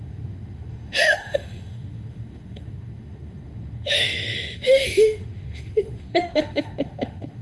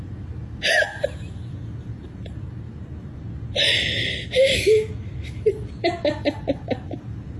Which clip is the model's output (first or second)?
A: first